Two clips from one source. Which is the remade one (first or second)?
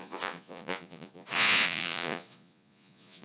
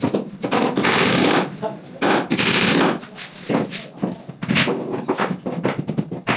first